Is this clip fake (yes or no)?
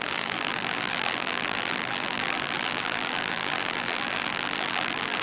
yes